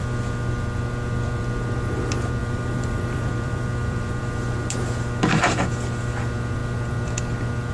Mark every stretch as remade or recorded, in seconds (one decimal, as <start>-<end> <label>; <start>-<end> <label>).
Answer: 0.0-2.4 recorded; 2.4-4.2 remade; 4.2-7.7 recorded